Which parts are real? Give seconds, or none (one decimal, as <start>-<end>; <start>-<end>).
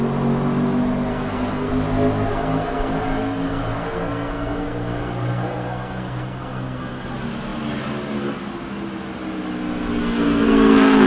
0.0-1.1; 1.7-2.3; 7.1-10.0